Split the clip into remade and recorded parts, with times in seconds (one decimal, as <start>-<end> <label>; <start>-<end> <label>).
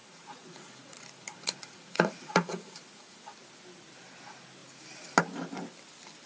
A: 0.0-3.2 remade; 3.2-6.3 recorded